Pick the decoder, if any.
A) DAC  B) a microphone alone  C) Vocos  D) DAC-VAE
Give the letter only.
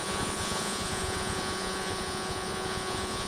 C